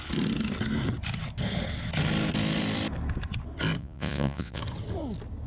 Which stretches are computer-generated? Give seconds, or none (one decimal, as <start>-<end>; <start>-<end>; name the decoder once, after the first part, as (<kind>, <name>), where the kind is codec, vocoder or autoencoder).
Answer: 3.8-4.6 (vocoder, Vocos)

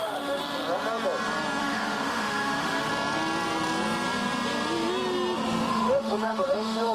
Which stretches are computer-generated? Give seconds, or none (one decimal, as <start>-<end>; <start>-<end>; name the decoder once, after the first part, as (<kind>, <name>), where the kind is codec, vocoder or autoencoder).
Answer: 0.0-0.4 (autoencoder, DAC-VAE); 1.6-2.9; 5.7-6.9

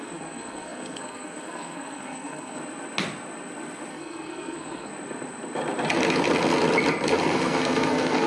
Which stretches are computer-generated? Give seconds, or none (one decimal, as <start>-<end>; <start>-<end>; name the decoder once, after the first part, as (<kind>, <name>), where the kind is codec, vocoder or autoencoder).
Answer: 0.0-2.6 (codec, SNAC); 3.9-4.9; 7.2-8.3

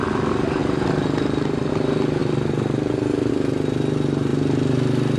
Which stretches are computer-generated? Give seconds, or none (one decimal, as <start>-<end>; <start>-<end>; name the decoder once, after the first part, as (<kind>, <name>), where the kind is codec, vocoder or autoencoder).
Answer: 2.2-3.3 (vocoder, BigVGAN v2)

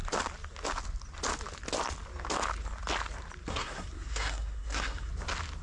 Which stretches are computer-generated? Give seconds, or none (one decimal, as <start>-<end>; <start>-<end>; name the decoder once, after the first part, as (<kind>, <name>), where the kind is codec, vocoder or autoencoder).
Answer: 3.5-5.1 (codec, SNAC)

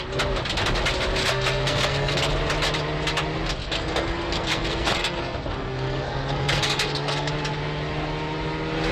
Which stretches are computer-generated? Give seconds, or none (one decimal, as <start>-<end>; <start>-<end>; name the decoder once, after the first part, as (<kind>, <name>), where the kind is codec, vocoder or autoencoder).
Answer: 1.2-2.3 (codec, SNAC); 3.6-7.3